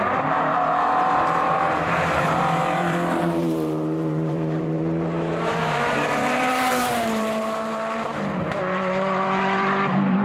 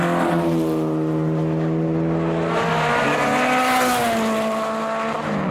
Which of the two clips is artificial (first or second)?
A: first